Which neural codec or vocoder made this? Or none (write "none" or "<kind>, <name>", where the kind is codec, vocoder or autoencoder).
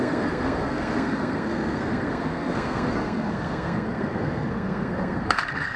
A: codec, SNAC